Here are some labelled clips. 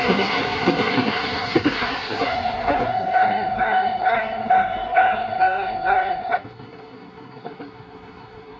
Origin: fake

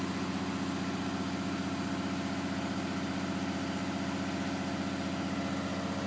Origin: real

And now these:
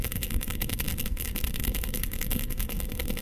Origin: fake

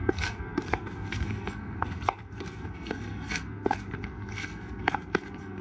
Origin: fake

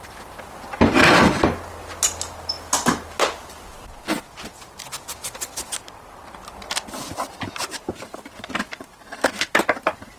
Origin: real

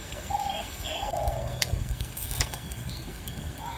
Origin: fake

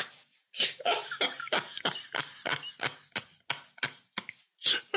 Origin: real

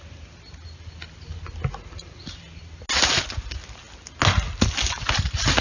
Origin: real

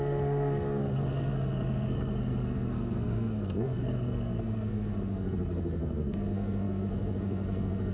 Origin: fake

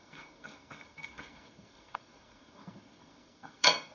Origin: fake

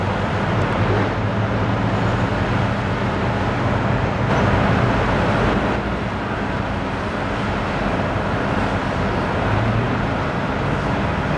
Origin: real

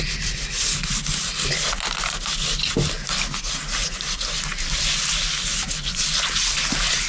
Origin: real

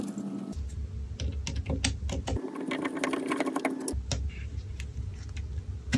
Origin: real